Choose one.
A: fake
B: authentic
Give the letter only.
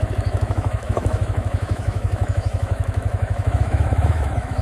A